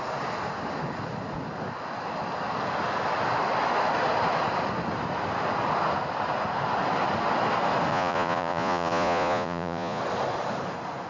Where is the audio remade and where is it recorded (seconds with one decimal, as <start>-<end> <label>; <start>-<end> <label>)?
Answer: 0.0-7.9 recorded; 7.9-10.0 remade; 10.0-11.1 recorded